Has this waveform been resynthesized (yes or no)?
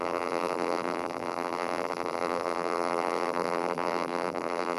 yes